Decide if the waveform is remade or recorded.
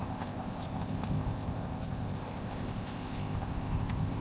remade